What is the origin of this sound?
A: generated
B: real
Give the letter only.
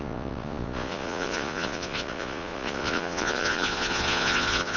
A